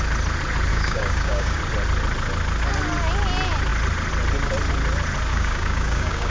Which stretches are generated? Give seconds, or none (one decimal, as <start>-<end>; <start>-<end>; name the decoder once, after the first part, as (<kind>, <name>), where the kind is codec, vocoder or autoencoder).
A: 0.7-1.6 (codec, DAC); 5.3-6.3